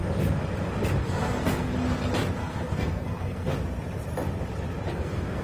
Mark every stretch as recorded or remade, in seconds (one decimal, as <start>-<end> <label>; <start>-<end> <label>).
0.0-1.0 recorded; 1.0-1.7 remade; 1.7-2.4 recorded; 2.4-3.5 remade; 3.5-4.9 recorded; 4.9-5.4 remade